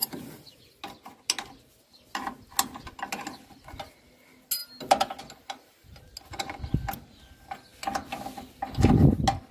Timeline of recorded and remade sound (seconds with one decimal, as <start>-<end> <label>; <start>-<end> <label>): 0.0-9.5 recorded